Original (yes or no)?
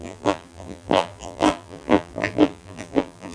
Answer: no